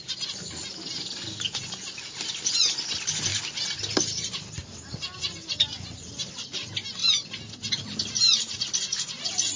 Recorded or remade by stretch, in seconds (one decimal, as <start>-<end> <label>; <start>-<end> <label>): 0.0-9.6 recorded